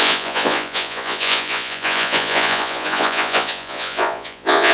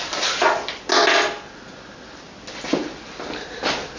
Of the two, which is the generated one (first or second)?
first